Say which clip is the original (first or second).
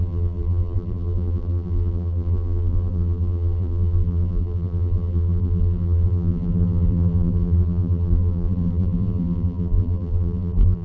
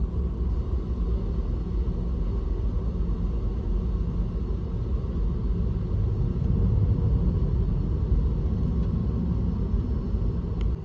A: second